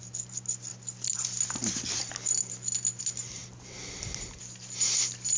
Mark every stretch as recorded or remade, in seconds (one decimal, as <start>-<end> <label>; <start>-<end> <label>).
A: 0.0-5.4 recorded